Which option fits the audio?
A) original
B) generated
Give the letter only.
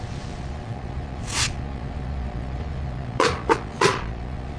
B